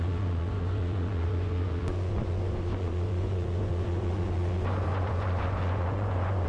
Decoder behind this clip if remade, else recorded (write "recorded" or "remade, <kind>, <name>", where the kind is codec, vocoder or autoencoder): remade, vocoder, Vocos